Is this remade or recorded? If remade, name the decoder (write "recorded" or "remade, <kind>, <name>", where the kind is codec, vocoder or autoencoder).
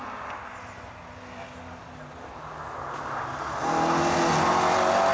recorded